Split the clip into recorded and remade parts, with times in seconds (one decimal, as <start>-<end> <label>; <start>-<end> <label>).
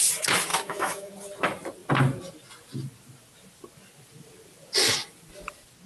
0.0-0.5 recorded; 0.5-1.1 remade; 1.1-5.9 recorded